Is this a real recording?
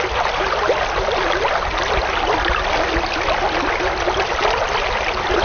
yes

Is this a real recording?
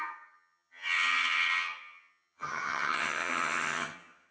no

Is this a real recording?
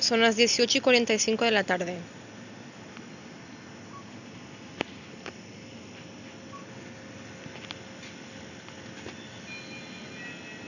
yes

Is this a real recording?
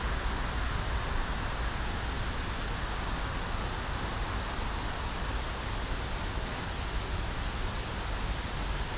yes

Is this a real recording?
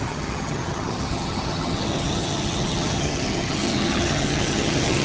no